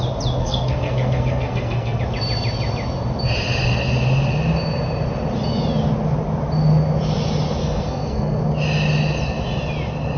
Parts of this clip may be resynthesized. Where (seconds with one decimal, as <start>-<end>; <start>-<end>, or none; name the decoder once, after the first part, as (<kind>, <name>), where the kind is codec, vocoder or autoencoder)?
0.4-2.0 (codec, SNAC); 7.6-8.4